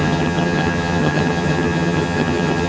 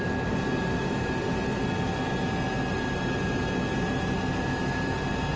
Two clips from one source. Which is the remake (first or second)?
first